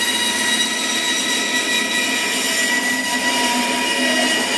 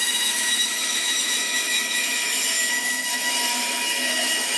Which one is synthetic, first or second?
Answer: second